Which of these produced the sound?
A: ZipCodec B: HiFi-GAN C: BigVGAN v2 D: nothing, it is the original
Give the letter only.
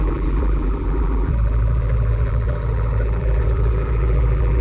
C